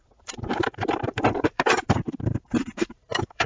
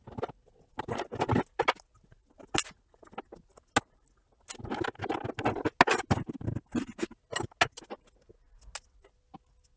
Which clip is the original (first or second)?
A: second